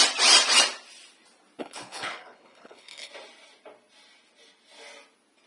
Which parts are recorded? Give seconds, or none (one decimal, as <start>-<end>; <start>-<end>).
0.0-1.6; 3.1-5.5